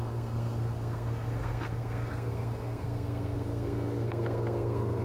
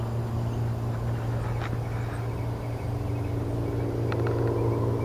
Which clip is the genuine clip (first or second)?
second